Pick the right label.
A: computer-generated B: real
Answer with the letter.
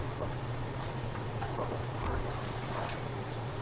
A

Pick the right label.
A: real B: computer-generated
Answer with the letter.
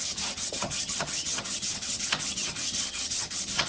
B